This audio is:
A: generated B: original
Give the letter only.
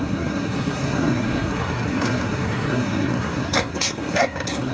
A